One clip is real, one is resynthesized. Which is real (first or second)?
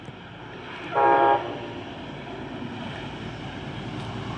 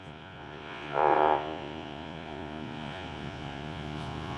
first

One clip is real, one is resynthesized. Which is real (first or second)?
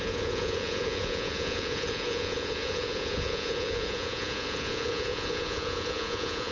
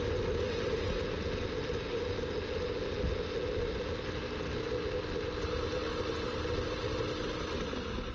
second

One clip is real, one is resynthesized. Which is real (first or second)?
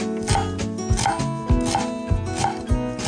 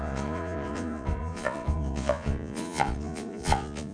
first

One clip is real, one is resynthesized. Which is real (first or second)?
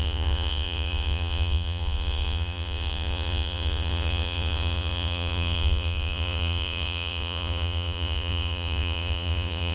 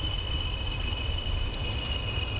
second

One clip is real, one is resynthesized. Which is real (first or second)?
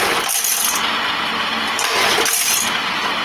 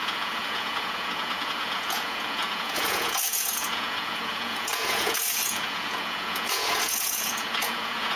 first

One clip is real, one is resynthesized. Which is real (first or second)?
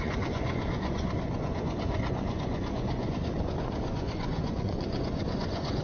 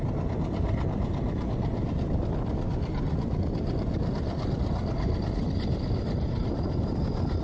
second